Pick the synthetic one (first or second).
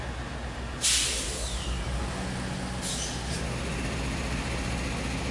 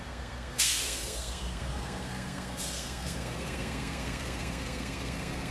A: second